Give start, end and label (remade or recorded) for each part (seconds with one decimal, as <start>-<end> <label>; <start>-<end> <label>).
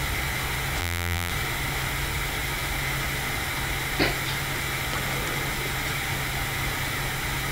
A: 0.0-0.8 recorded; 0.8-1.3 remade; 1.3-7.5 recorded